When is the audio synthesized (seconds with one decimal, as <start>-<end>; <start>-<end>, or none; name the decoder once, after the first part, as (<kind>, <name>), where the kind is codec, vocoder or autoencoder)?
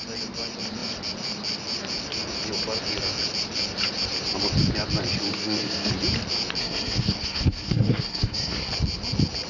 5.3-5.9 (codec, SNAC); 6.6-8.7